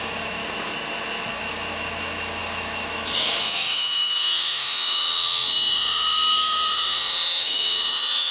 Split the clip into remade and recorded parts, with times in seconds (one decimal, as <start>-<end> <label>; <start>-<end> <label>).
0.0-0.4 remade; 0.4-1.3 recorded; 1.3-8.3 remade